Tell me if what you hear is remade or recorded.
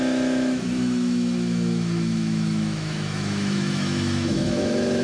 remade